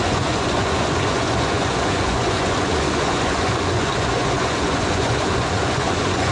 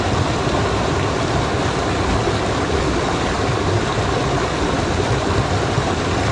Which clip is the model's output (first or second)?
first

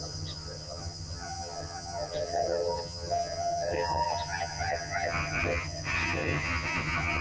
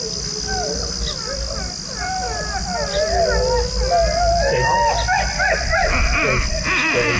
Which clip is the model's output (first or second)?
first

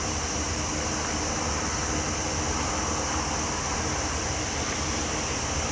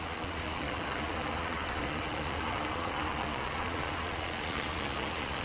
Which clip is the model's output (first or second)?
second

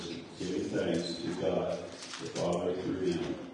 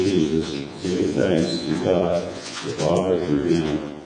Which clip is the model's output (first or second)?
second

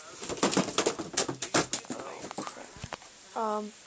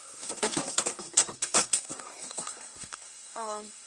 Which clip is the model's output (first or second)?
second